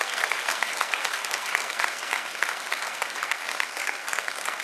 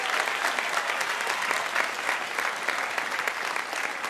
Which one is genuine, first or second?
second